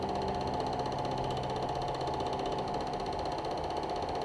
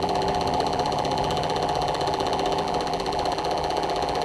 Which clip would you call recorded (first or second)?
first